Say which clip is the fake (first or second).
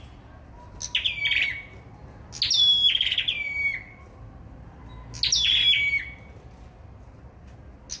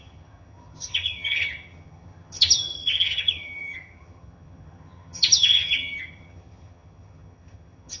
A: second